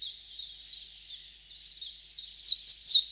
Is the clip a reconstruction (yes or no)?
no